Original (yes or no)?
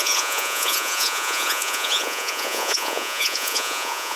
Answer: no